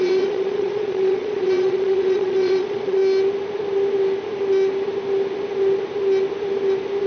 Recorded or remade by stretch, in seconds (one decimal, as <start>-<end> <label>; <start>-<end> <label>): 0.0-3.0 remade; 3.0-7.1 recorded